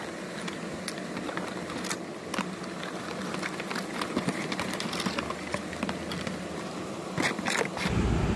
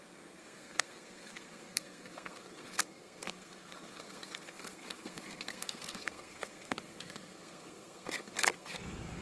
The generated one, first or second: second